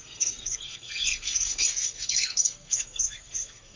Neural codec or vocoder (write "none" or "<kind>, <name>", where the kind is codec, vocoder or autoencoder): codec, SNAC